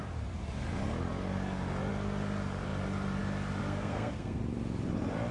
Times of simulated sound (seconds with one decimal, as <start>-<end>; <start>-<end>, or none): 3.6-4.4